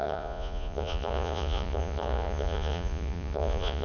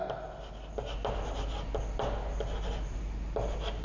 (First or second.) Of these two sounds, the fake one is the first